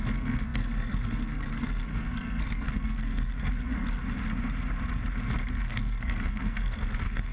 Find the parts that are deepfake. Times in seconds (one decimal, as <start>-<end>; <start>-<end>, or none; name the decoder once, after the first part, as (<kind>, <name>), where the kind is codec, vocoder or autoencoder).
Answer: 0.0-4.0 (codec, SNAC); 5.5-7.3